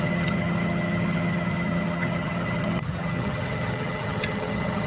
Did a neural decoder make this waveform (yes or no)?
yes